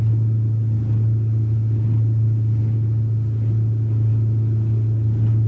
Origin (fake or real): real